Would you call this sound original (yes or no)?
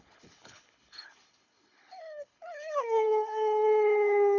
no